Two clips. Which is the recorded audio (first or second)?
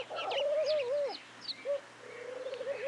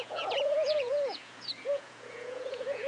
first